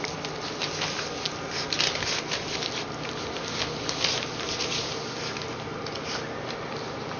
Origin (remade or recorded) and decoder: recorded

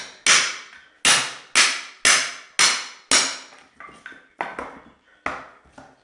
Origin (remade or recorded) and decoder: recorded